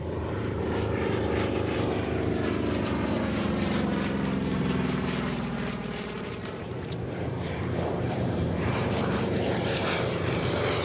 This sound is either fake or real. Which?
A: fake